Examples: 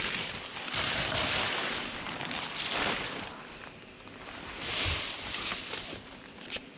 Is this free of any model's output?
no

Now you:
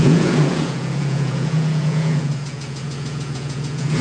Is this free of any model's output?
no